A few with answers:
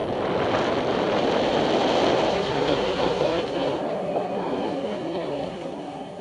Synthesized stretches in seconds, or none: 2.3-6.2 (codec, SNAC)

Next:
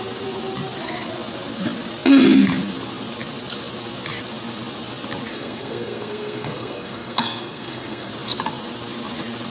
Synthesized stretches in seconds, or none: 5.3-8.1 (codec, SNAC)

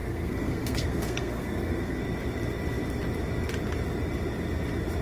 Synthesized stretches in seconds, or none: 0.0-2.0 (codec, SNAC)

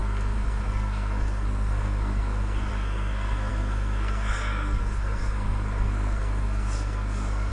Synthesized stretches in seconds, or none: 0.0-7.5 (codec, SNAC)